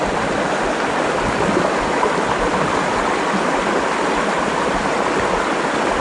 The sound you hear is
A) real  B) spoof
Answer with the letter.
A